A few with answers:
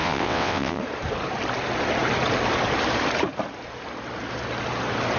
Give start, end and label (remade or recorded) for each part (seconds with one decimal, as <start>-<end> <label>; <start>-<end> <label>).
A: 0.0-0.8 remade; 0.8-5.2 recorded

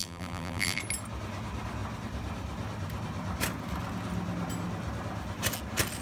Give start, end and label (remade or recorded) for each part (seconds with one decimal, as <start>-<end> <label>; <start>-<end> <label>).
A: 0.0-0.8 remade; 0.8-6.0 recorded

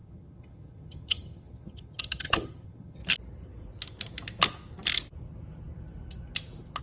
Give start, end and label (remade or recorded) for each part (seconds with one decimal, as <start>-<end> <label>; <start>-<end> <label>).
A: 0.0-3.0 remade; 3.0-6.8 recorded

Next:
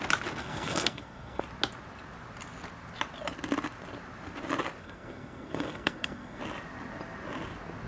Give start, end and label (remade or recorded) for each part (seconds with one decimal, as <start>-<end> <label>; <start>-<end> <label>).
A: 0.0-0.4 recorded; 0.4-1.4 remade; 1.4-4.8 recorded; 4.8-6.4 remade; 6.4-7.9 recorded

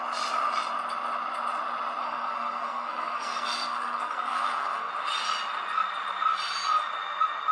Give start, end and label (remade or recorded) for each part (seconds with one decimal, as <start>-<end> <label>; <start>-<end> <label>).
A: 0.0-2.0 recorded; 2.0-4.9 remade; 4.9-7.5 recorded

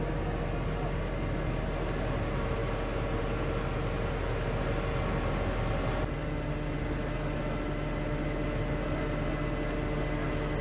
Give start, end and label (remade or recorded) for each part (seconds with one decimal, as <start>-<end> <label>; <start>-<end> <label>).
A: 0.0-10.6 recorded